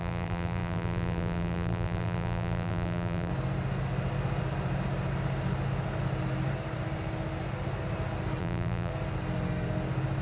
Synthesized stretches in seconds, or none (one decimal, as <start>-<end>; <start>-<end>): 0.0-3.3; 8.4-8.9